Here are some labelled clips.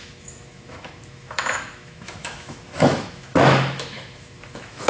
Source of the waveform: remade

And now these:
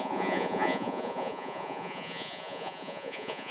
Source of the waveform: remade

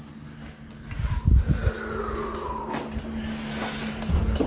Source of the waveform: recorded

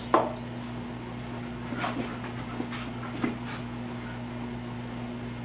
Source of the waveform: recorded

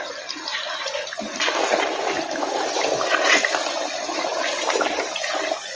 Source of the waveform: recorded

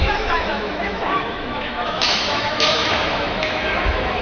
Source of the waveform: remade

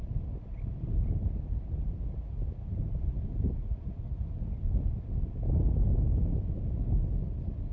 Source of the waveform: recorded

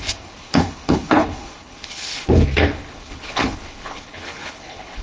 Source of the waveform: remade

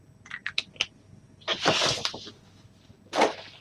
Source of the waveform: recorded